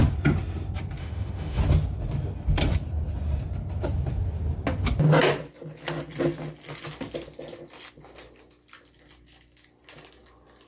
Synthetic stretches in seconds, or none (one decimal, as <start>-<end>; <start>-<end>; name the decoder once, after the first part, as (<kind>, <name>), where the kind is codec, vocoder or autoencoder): 1.0-1.6 (autoencoder, DAC-VAE)